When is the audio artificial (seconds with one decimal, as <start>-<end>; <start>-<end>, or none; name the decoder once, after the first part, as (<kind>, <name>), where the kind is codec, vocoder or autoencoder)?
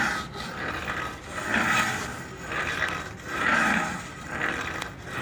2.1-4.8 (vocoder, BigVGAN v2)